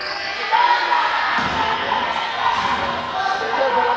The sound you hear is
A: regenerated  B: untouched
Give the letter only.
A